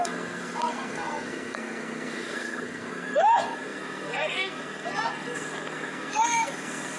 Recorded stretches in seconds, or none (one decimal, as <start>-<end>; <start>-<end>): none